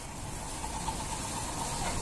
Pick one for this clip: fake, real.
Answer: real